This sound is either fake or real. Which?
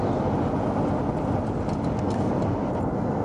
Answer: real